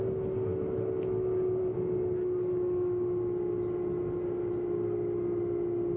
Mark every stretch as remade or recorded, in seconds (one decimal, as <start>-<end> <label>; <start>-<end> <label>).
0.0-6.0 recorded